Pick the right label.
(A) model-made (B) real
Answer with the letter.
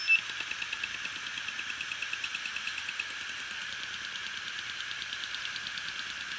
B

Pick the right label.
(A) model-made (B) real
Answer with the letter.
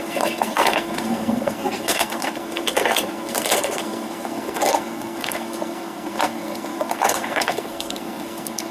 A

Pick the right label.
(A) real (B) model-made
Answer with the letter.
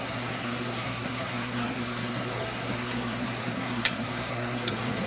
B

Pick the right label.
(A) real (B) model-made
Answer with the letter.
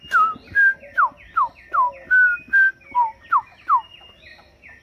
A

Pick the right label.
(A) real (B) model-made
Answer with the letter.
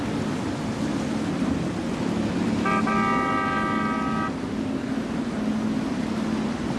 A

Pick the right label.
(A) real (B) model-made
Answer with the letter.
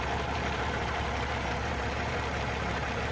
B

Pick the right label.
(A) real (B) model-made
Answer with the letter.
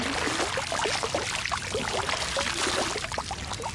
A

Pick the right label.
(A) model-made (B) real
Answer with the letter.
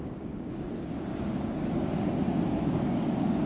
A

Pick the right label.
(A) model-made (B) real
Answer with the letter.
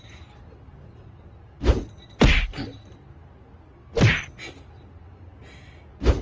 B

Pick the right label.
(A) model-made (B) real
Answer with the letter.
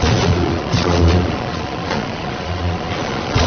A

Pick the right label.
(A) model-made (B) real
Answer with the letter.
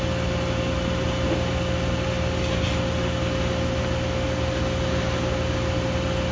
B